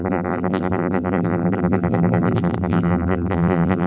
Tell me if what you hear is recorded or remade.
remade